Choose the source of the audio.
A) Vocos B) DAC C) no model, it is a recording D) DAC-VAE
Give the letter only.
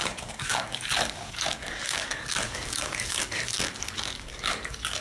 B